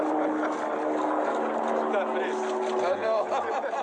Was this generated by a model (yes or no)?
no